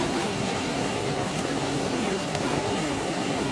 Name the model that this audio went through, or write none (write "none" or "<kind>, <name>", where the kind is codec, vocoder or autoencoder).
codec, SNAC